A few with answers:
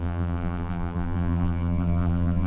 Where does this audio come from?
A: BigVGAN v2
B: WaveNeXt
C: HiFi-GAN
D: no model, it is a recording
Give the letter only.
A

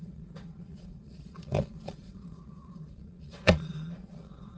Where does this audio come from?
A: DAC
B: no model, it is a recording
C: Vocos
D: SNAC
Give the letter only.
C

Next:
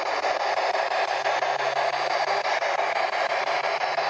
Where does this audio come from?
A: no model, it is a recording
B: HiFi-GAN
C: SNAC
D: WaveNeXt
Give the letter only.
A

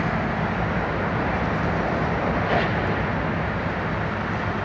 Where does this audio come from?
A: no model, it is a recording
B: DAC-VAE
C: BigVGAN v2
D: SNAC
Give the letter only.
A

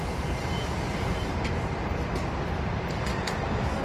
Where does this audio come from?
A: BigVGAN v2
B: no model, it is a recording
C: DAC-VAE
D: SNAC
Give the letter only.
A